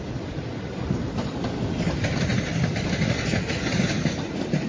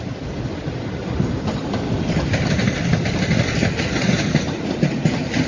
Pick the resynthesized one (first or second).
second